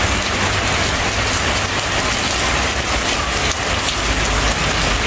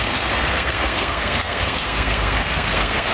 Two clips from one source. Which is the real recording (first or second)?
first